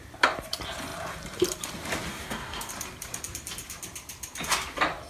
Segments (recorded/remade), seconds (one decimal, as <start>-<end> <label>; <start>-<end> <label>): 0.0-2.1 recorded; 2.1-2.7 remade; 2.7-5.1 recorded

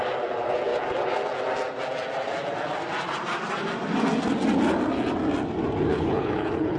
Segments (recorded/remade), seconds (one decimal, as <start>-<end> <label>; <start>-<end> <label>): 0.0-5.9 recorded; 5.9-6.8 remade